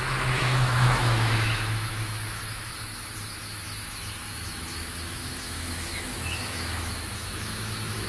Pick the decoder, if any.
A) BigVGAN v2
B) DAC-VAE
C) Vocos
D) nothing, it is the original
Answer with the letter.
B